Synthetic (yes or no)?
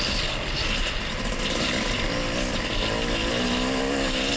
no